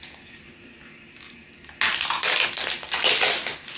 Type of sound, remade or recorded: recorded